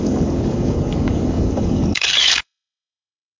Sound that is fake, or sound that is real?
fake